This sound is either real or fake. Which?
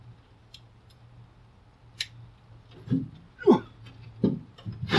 real